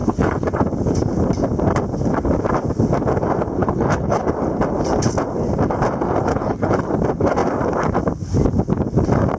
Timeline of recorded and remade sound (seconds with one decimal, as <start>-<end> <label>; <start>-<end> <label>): 0.0-0.5 remade; 0.5-3.6 recorded; 3.6-4.3 remade; 4.3-6.3 recorded; 6.3-6.9 remade; 6.9-9.4 recorded